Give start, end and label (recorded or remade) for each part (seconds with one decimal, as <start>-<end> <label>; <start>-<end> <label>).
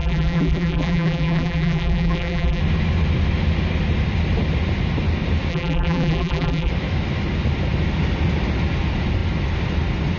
0.0-2.6 remade; 2.6-5.5 recorded; 5.5-6.7 remade; 6.7-10.2 recorded